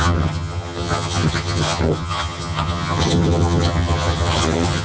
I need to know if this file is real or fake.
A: fake